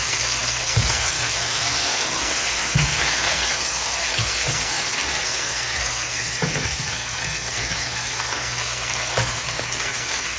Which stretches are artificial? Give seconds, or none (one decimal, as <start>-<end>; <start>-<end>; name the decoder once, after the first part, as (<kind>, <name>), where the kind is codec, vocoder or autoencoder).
0.0-10.4 (codec, SNAC)